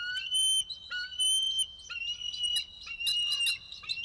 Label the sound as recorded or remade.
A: recorded